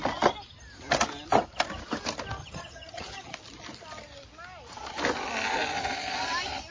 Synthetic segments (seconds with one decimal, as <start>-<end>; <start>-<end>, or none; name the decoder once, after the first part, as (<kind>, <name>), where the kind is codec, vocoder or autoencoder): 2.4-3.3 (vocoder, HiFi-GAN)